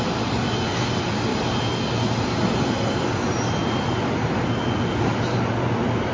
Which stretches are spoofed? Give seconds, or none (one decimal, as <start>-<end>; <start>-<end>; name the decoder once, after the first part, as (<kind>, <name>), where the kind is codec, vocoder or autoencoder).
none